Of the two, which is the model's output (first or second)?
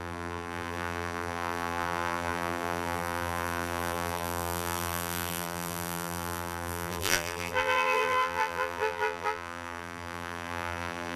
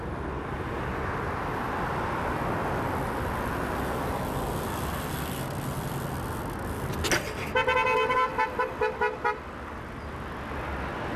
first